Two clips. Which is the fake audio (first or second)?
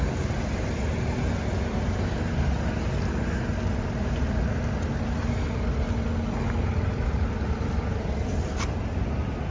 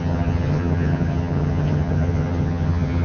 second